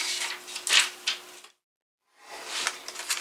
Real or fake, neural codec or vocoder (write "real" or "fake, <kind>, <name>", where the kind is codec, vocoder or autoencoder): real